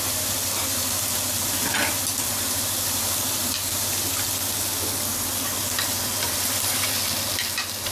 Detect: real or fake real